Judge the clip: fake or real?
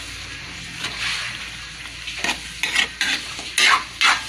real